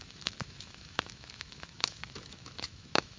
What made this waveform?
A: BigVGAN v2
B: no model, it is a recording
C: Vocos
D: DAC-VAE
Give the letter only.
D